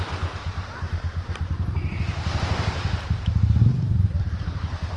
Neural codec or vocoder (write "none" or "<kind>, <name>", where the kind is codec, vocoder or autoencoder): vocoder, BigVGAN v2